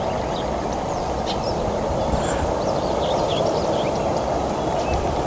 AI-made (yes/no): no